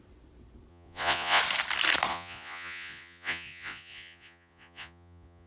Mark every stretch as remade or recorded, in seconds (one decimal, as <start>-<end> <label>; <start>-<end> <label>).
0.0-0.7 recorded; 0.7-1.4 remade; 1.4-2.1 recorded; 2.1-5.5 remade